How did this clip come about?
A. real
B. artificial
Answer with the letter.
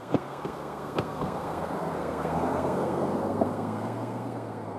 B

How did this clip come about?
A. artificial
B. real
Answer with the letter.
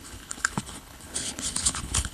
A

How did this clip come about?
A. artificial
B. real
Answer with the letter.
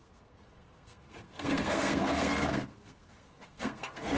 A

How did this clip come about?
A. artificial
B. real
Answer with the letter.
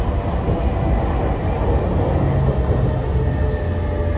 B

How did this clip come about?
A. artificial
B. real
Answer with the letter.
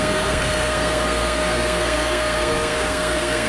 A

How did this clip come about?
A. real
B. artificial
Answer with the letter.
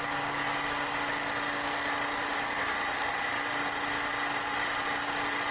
A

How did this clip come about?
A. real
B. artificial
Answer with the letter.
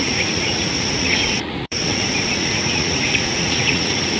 B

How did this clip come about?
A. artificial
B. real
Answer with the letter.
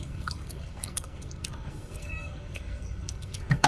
A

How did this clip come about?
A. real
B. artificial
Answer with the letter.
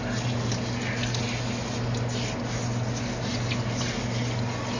A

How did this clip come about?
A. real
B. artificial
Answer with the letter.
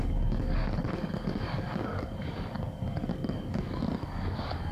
B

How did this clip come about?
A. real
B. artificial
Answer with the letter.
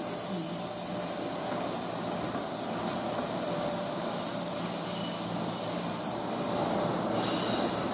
A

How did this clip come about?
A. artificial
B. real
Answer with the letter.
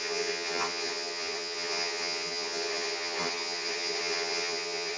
A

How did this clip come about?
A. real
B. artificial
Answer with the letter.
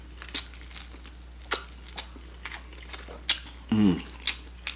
A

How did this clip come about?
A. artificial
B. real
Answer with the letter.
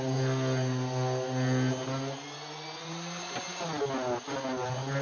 B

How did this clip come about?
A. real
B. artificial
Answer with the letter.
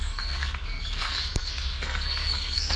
B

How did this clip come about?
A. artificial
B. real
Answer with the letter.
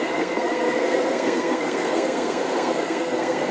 A